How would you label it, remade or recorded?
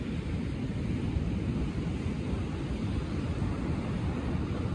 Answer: recorded